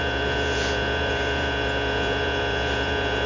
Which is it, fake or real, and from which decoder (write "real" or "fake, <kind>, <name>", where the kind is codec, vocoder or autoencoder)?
fake, vocoder, Vocos